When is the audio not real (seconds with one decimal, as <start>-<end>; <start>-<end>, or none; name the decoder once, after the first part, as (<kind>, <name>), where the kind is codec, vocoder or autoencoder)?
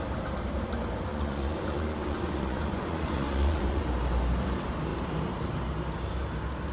1.1-3.8 (vocoder, Vocos)